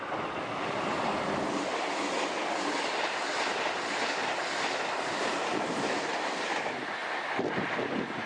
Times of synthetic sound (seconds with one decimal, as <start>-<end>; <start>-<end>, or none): none